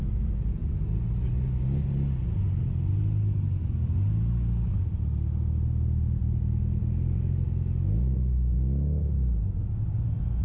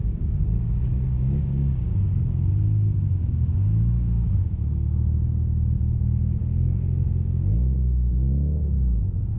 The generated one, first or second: second